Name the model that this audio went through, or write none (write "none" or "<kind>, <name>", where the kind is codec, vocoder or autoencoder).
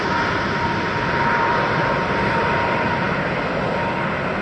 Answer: none